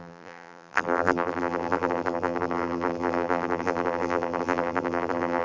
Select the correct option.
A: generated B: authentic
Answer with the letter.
A